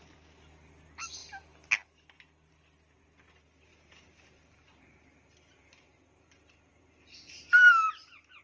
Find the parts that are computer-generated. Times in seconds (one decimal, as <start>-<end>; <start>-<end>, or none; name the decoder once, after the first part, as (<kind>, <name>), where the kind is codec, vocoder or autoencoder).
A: 3.7-7.7 (vocoder, BigVGAN v2)